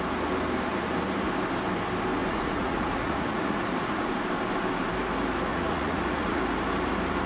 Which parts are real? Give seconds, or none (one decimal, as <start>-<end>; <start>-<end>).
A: 0.0-2.2; 4.1-5.5; 6.4-7.3